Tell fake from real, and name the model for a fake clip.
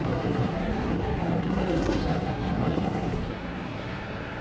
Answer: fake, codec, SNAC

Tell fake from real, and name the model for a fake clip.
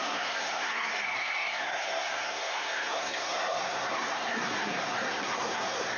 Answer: fake, codec, SNAC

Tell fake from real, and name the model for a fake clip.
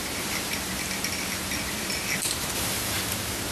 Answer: real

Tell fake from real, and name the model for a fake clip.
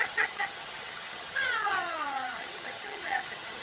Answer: fake, vocoder, HiFi-GAN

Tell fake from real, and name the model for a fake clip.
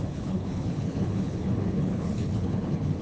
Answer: fake, codec, HILCodec